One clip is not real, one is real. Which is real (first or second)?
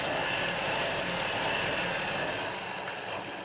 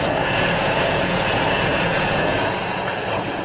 first